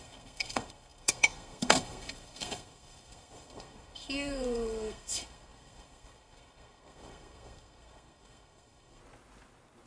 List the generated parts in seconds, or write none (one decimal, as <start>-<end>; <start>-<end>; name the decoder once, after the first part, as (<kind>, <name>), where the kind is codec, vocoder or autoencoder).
0.0-9.0 (codec, SNAC)